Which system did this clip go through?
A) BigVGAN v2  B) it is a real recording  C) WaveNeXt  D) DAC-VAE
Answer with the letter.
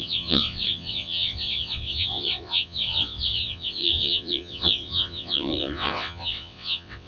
C